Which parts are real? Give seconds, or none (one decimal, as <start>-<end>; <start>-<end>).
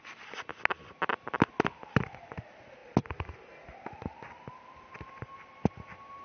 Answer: 0.0-6.2